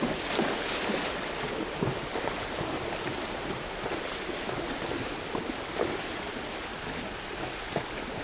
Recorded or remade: recorded